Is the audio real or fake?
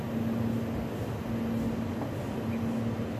real